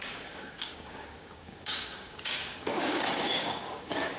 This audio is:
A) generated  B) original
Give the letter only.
A